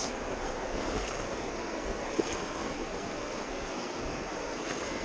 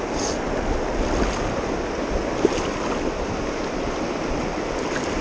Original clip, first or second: second